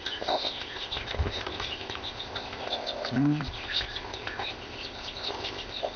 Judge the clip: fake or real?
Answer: fake